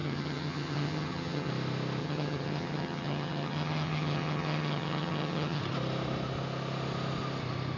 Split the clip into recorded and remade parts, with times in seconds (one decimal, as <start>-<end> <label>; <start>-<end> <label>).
0.0-1.5 remade; 1.5-2.0 recorded; 2.0-5.6 remade; 5.6-7.8 recorded